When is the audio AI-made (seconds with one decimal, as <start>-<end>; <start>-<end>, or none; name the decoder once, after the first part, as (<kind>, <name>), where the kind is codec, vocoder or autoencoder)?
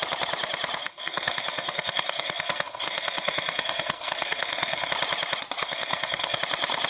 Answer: 0.8-4.9 (codec, SNAC); 5.6-6.4